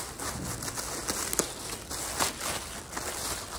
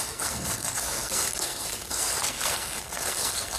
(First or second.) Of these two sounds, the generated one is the second